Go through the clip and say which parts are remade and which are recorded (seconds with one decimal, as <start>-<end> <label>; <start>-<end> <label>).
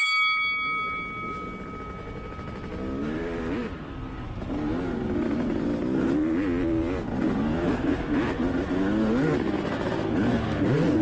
0.0-11.0 recorded